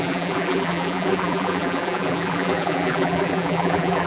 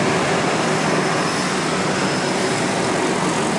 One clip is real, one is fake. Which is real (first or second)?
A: second